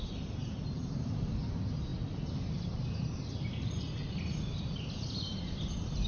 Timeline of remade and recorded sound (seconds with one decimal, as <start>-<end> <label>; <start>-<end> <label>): 0.0-6.1 recorded

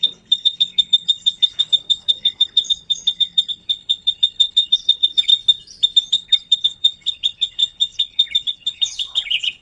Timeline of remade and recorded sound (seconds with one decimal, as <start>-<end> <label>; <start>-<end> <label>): 0.0-5.3 remade; 5.3-6.1 recorded; 6.1-9.6 remade

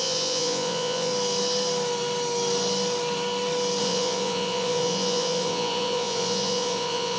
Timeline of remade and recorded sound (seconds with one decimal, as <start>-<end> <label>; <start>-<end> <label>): 0.0-1.1 remade; 1.1-3.8 recorded; 3.8-7.2 remade

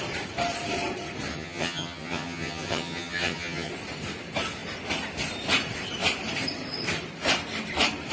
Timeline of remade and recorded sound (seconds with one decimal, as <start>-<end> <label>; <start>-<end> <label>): 0.0-1.3 recorded; 1.3-3.7 remade; 3.7-8.1 recorded

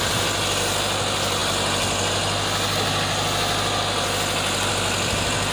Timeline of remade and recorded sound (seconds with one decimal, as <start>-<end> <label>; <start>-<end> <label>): 0.0-5.5 recorded

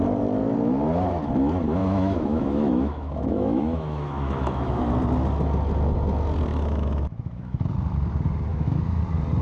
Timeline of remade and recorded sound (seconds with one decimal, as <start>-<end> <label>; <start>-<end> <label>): 0.0-1.8 recorded; 1.8-4.8 remade; 4.8-6.5 recorded; 6.5-7.7 remade; 7.7-8.5 recorded; 8.5-9.0 remade; 9.0-9.4 recorded